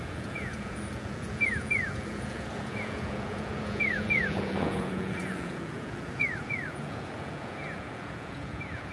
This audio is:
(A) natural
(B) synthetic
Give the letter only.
B